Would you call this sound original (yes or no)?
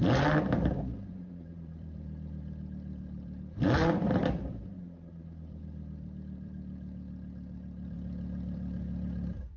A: no